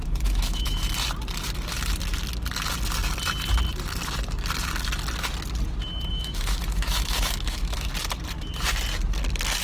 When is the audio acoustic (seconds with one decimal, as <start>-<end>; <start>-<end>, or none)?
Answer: 0.8-6.1; 7.9-9.6